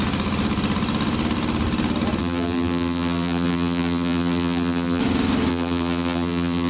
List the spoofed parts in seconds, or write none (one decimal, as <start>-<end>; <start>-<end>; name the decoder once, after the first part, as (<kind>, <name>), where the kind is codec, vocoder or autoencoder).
2.2-5.0 (vocoder, BigVGAN v2); 5.5-6.7